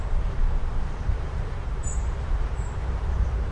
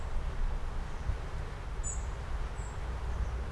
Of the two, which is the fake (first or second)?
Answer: first